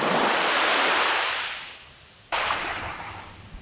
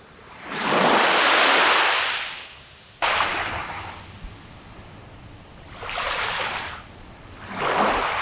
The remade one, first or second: first